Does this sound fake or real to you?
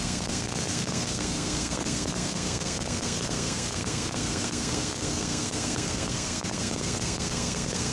fake